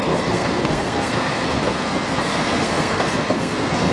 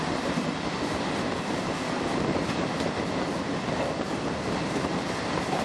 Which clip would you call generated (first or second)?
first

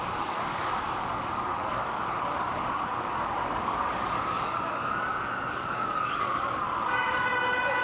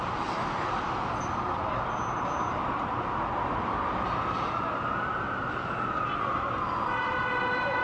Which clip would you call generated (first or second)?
first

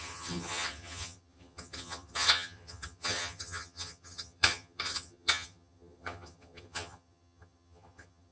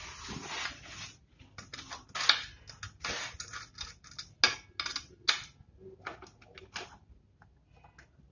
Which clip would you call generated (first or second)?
first